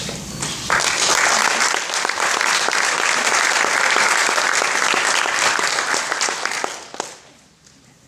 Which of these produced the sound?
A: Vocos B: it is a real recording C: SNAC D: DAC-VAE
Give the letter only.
B